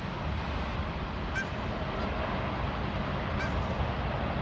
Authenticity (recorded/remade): recorded